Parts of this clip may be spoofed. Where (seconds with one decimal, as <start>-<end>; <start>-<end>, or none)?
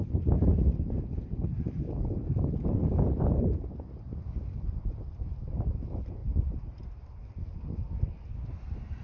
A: none